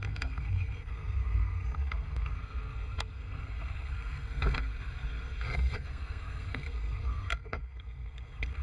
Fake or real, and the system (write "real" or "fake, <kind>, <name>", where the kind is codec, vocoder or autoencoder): fake, codec, SNAC